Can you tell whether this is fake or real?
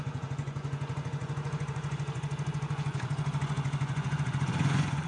fake